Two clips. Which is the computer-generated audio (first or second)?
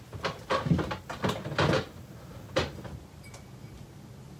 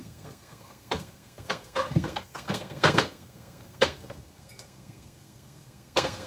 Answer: second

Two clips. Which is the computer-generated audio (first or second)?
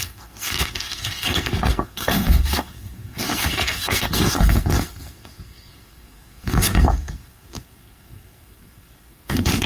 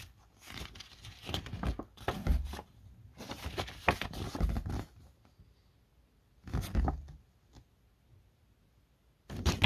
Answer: first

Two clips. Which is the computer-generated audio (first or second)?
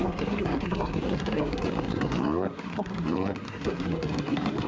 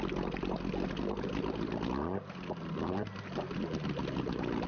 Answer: first